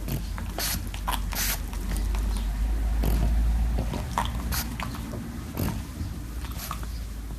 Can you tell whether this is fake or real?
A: real